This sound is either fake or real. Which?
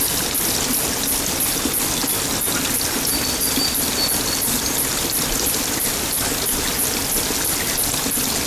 real